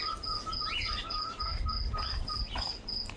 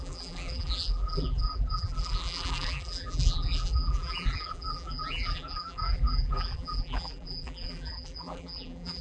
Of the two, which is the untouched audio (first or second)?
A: first